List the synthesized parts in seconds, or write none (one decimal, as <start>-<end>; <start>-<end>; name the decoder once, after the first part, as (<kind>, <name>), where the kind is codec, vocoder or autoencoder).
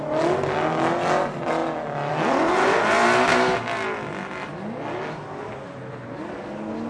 none